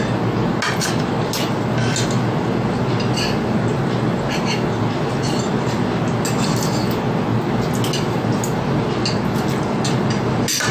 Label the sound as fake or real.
real